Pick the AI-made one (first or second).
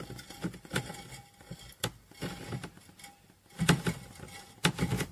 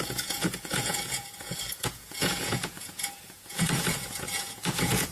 second